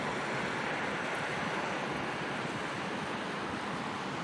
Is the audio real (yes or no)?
yes